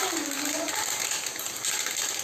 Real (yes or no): yes